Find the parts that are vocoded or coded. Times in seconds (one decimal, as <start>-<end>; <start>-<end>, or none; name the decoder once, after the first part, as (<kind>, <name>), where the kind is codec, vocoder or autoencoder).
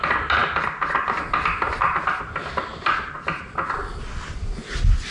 none